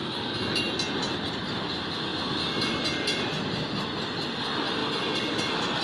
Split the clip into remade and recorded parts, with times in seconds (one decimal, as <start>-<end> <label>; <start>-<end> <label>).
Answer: 0.0-5.8 recorded